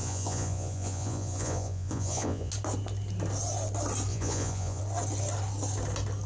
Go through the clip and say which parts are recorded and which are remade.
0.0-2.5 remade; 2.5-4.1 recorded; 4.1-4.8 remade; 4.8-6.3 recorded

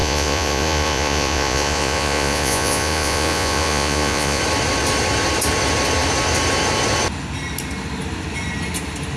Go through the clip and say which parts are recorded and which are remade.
0.0-4.4 remade; 4.4-9.2 recorded

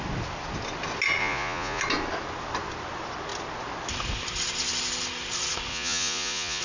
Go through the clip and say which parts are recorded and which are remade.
0.0-1.2 recorded; 1.2-1.8 remade; 1.8-5.7 recorded; 5.7-6.6 remade

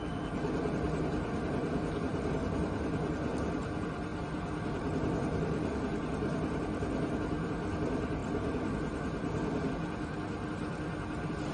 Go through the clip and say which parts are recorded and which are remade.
0.0-11.5 recorded

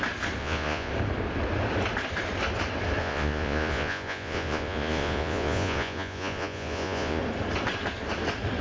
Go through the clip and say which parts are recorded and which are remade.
0.0-0.4 recorded; 0.4-0.9 remade; 0.9-3.0 recorded; 3.0-7.2 remade; 7.2-8.6 recorded